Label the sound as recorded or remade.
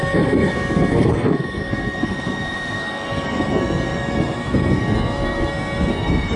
remade